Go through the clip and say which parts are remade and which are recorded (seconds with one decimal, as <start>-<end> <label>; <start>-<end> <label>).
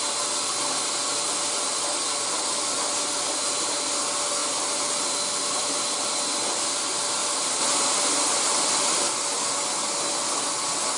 0.0-7.2 recorded; 7.2-8.7 remade; 8.7-11.0 recorded